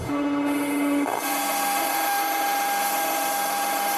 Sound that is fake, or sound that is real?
fake